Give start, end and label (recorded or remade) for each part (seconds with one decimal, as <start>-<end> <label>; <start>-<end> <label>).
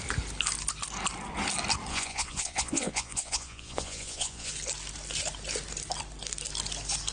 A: 0.0-1.9 recorded; 1.9-4.5 remade; 4.5-7.1 recorded